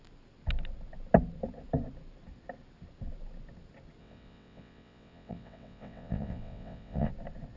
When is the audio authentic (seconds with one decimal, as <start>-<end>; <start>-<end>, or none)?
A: 0.0-4.0; 7.1-7.6